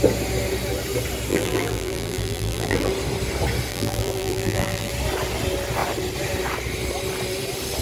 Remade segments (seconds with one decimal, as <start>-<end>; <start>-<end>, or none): 1.3-2.9; 3.7-4.9

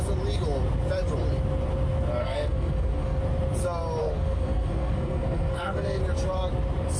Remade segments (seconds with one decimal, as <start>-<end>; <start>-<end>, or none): 2.2-3.2; 4.0-6.0

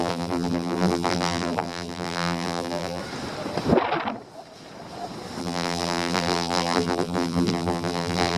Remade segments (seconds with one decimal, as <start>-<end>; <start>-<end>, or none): 0.0-3.0; 5.4-8.4

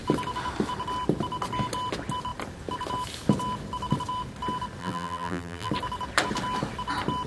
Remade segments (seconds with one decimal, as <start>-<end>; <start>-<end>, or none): 4.8-5.7

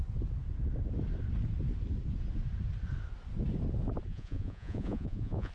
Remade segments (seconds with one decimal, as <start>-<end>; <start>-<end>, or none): 4.1-5.5

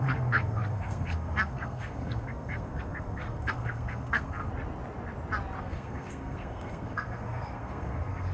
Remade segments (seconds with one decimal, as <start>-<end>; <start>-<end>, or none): 0.0-4.5; 5.6-8.3

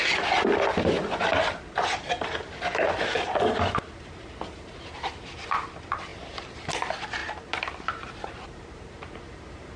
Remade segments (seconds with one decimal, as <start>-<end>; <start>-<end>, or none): 6.1-6.6; 7.2-7.9